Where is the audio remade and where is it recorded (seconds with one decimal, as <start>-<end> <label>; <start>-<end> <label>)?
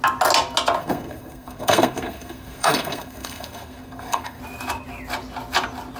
0.0-0.8 recorded; 0.8-4.4 remade; 4.4-6.0 recorded